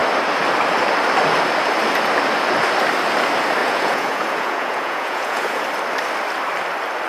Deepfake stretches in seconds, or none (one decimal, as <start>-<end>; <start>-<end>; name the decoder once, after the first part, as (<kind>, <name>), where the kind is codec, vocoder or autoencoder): 3.6-5.6 (vocoder, Vocos)